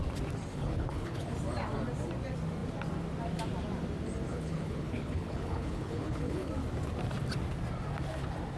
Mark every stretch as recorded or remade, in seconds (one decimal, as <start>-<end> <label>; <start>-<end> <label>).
0.0-0.5 recorded; 0.5-1.3 remade; 1.3-4.3 recorded; 4.3-6.5 remade; 6.5-8.6 recorded